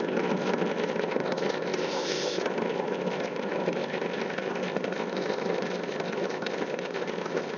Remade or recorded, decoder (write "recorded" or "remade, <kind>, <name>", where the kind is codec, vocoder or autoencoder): remade, codec, ZipCodec